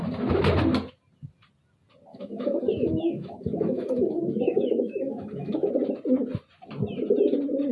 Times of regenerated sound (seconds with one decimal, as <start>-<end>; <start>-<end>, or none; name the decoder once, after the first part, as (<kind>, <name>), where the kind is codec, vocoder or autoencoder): 2.1-5.7 (autoencoder, DAC-VAE)